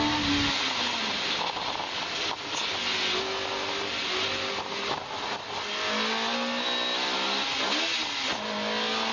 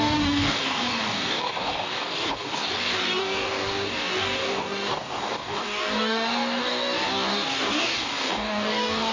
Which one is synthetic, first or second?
second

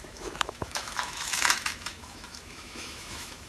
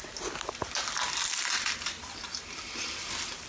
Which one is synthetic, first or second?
first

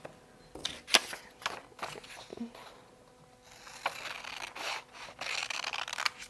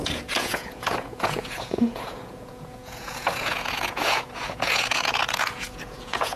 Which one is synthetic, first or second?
second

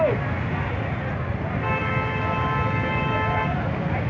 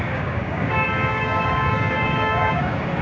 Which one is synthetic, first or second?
second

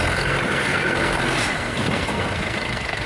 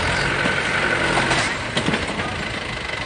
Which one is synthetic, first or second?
first